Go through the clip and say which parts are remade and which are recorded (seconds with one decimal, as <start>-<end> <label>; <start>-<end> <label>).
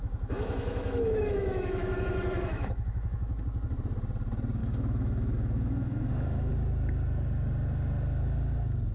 0.0-3.4 remade; 3.4-4.6 recorded; 4.6-6.5 remade; 6.5-8.9 recorded